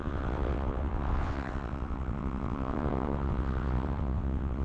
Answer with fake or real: fake